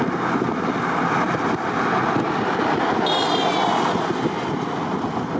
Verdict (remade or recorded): recorded